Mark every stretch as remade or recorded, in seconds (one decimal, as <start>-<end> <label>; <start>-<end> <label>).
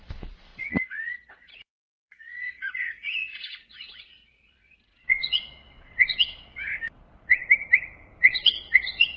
0.0-7.4 remade; 7.4-8.2 recorded; 8.2-9.2 remade